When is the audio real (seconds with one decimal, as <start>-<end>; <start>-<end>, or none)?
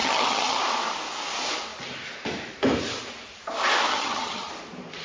0.6-3.9; 4.5-5.0